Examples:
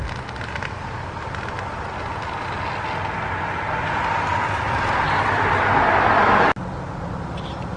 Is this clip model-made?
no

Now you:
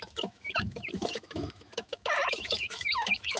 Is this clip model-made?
yes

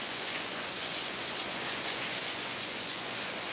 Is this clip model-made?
yes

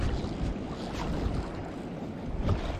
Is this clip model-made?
no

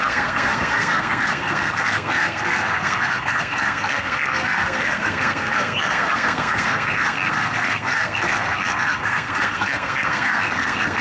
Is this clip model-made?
yes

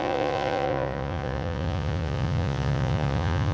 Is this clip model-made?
yes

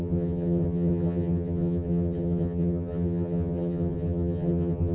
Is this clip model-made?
yes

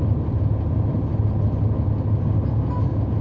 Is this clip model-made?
no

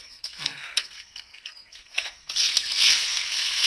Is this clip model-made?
yes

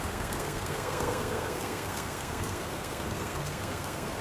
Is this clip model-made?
yes